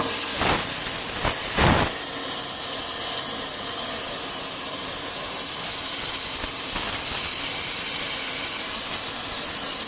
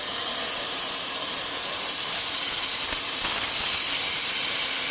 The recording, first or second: first